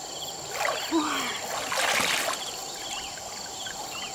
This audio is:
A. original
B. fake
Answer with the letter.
A